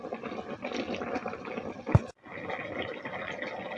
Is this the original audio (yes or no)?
yes